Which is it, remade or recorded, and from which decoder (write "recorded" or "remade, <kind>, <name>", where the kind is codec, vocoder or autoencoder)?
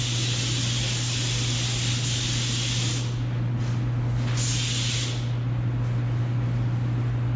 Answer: recorded